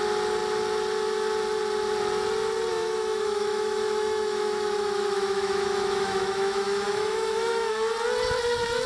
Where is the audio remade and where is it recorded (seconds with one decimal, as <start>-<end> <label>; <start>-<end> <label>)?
0.0-2.7 recorded; 2.7-7.9 remade; 7.9-8.9 recorded